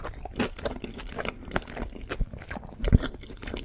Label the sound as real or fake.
real